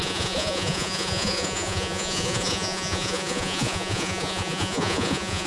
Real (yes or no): no